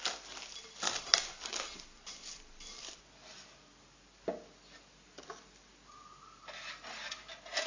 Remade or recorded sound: recorded